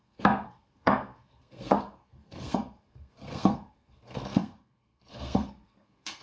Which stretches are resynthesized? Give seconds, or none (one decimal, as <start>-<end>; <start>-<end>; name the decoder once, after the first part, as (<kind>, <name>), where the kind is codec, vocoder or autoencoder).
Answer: 0.0-6.2 (codec, SNAC)